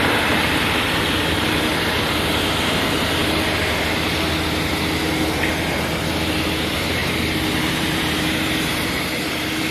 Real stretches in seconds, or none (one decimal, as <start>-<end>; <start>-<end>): 0.0-7.0